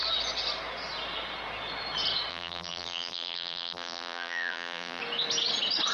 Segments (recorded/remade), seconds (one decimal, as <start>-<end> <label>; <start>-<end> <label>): 0.0-2.3 recorded; 2.3-5.0 remade; 5.0-5.9 recorded